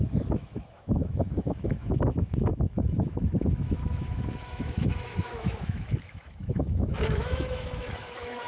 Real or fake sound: fake